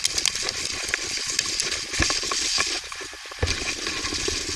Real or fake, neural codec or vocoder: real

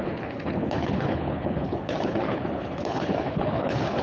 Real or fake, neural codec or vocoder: fake, codec, HILCodec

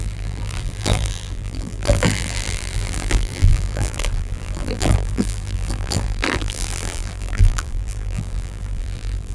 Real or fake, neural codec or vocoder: fake, vocoder, BigVGAN v2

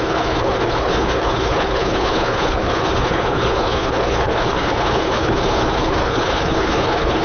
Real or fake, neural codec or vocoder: fake, codec, HILCodec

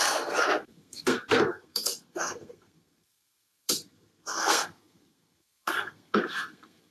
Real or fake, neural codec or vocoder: fake, codec, SNAC